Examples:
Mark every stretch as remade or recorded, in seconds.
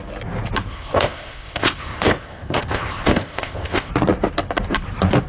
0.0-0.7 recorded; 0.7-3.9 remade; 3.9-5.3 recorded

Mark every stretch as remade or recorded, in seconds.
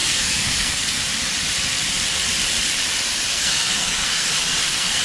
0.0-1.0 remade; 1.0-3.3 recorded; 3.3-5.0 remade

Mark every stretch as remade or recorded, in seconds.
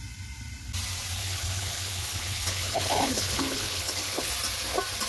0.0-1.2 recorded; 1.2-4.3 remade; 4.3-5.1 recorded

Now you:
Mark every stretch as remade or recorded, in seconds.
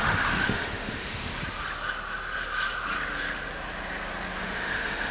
0.0-1.3 remade; 1.3-4.4 recorded; 4.4-5.1 remade